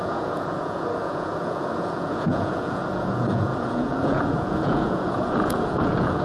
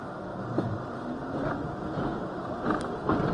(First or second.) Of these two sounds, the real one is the second